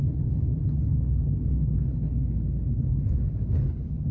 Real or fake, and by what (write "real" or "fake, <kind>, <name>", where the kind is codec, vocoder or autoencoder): fake, codec, HILCodec